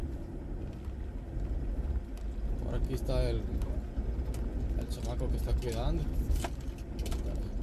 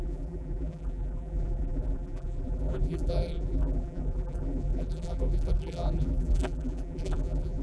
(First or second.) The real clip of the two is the first